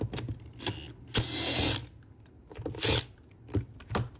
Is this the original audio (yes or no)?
yes